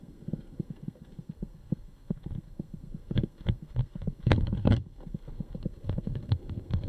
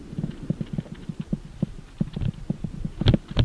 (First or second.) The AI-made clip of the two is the first